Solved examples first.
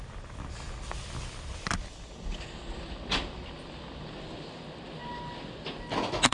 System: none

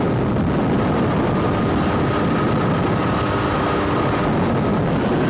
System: none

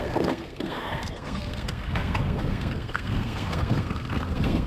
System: codec, SNAC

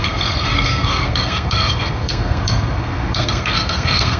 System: codec, SNAC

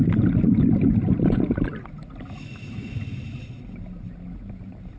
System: none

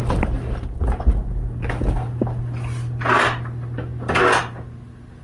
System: none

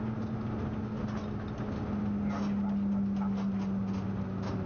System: none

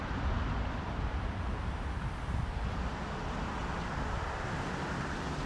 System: vocoder, BigVGAN v2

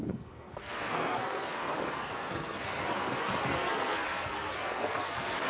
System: codec, SNAC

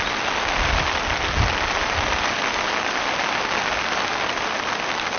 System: none